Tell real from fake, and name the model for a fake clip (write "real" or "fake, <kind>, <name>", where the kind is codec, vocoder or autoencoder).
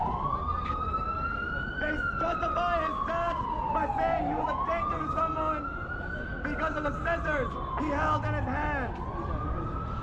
real